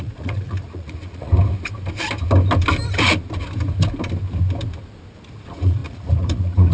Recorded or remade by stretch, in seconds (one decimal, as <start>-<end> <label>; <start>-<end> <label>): 0.0-1.3 remade; 1.3-5.3 recorded; 5.3-6.7 remade